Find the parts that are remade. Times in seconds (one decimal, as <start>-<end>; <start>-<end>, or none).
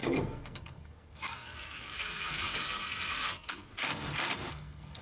0.0-3.7; 4.5-5.0